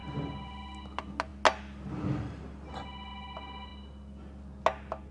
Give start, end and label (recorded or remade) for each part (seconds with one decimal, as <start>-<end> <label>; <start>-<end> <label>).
0.0-5.1 recorded